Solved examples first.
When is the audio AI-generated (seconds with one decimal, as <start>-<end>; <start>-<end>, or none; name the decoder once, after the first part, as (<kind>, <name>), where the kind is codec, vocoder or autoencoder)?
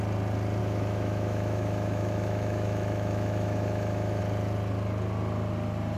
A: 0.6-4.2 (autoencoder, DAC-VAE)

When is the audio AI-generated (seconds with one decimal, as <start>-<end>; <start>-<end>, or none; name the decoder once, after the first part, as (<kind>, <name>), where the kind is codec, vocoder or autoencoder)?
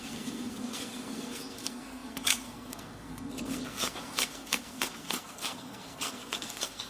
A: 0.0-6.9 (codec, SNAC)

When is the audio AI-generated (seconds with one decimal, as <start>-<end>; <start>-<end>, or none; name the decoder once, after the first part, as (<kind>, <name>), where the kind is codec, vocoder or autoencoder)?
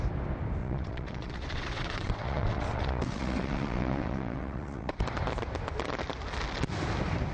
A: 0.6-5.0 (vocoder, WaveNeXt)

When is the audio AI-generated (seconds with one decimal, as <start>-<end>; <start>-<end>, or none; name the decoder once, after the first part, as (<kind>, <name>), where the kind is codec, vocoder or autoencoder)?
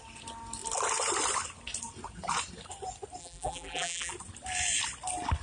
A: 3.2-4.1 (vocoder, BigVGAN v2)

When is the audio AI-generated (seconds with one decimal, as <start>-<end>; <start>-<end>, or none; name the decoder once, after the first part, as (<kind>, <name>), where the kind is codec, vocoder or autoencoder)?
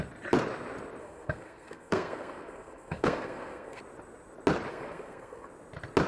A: 1.0-3.8 (codec, SNAC); 4.7-5.5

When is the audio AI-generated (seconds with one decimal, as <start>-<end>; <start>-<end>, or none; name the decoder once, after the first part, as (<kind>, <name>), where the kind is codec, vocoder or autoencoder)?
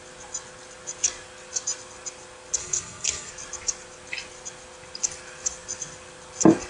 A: 2.6-3.3 (codec, SNAC)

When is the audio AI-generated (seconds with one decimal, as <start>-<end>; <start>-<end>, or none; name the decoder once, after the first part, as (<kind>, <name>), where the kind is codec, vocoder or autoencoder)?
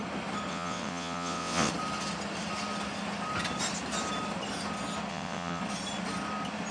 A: 0.5-1.7 (vocoder, WaveNeXt); 5.1-5.6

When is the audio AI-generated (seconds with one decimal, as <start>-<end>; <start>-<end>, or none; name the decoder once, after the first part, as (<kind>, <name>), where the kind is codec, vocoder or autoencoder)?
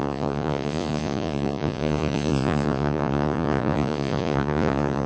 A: 0.0-5.1 (vocoder, Vocos)